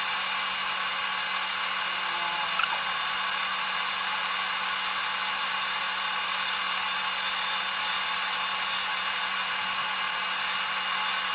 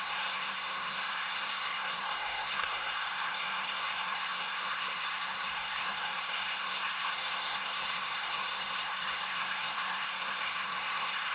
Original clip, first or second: first